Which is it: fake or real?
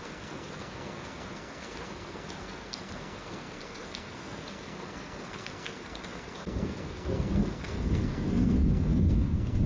fake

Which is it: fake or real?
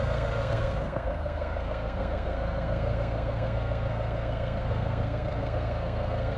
fake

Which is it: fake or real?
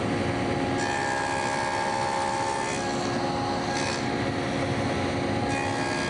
real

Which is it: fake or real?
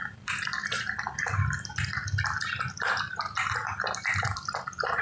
fake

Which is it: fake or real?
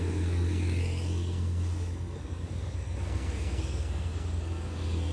fake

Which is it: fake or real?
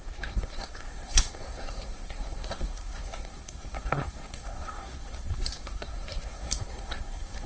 fake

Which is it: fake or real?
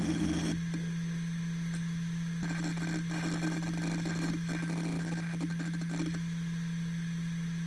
real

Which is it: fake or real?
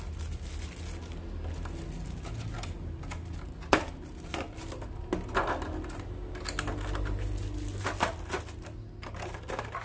real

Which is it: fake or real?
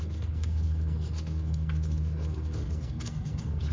fake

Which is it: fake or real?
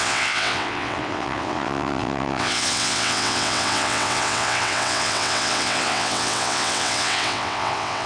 fake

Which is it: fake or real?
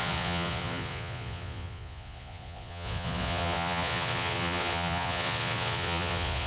fake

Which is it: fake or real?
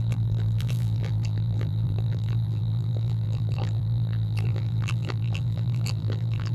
fake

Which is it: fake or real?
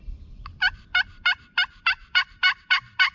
fake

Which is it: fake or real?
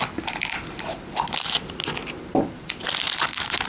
real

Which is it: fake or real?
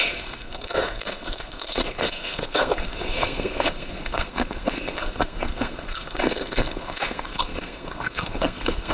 fake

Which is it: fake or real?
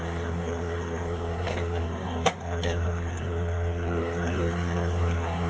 fake